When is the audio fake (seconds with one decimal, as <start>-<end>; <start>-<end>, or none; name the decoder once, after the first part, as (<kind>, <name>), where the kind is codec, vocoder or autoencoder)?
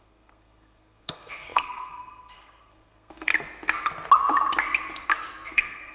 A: 0.0-3.3 (codec, SNAC); 5.5-5.9